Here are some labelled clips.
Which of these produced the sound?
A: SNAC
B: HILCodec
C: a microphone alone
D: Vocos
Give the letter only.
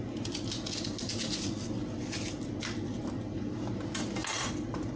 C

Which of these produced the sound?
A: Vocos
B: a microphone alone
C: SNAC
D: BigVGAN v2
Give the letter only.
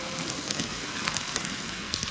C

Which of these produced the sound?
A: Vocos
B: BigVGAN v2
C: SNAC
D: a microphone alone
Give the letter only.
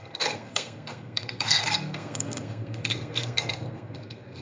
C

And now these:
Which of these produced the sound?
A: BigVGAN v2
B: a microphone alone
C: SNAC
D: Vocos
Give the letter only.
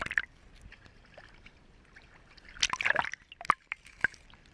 B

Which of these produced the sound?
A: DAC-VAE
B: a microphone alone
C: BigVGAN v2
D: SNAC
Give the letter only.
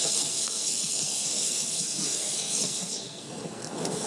D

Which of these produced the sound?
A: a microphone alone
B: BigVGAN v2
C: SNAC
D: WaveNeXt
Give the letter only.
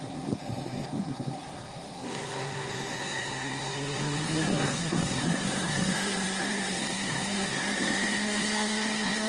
C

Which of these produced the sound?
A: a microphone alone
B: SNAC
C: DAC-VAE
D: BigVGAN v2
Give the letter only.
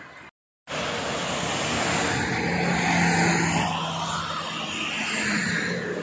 A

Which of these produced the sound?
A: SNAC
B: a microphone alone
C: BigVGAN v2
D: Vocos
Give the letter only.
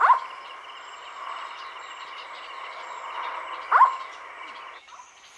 B